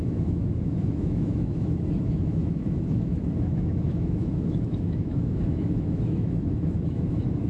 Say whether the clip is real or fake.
fake